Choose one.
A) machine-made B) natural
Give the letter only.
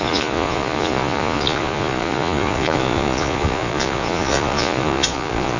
A